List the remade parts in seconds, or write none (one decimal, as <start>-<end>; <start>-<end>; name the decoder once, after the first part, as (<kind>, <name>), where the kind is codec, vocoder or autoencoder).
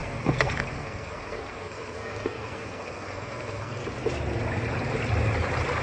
0.0-3.8 (codec, SNAC)